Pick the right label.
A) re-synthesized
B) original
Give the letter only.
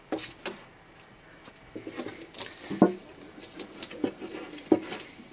B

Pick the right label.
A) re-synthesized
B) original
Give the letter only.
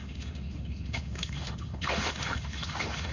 A